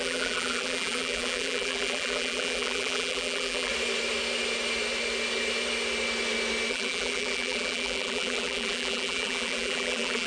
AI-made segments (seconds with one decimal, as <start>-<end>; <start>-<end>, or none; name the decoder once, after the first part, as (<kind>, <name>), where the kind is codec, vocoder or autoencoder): 0.0-3.7 (vocoder, BigVGAN v2); 6.7-10.3